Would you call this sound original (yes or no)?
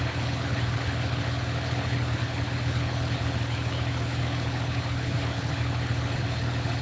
no